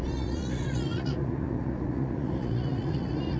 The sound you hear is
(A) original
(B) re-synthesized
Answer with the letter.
B